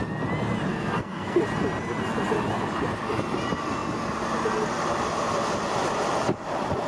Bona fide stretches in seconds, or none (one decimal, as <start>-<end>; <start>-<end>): 0.0-0.7; 1.4-6.9